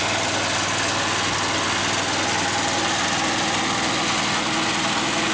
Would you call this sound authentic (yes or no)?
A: yes